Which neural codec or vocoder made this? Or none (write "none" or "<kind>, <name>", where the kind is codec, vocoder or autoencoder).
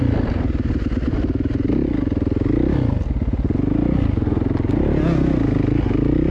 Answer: none